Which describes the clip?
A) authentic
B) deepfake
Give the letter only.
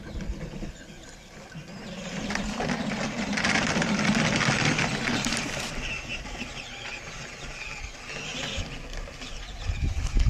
A